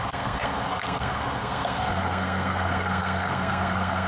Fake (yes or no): yes